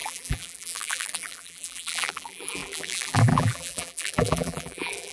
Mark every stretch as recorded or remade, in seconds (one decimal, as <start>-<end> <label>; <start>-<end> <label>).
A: 0.0-5.1 remade